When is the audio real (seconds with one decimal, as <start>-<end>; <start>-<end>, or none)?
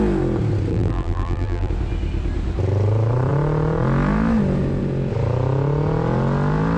0.0-0.7; 1.7-6.8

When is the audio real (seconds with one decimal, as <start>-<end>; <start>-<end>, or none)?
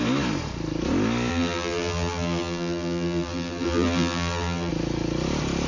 0.0-1.3; 4.7-5.7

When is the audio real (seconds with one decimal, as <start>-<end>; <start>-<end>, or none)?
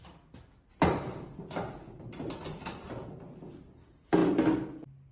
0.0-0.7; 3.8-5.1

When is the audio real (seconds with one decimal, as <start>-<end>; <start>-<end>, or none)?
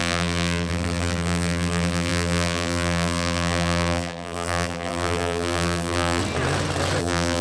6.2-7.0